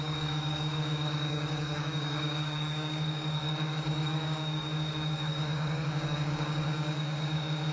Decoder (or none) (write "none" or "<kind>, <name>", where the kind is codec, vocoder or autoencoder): codec, DAC